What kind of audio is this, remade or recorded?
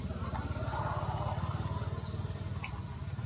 recorded